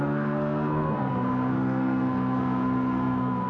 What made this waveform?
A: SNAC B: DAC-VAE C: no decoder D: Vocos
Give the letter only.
A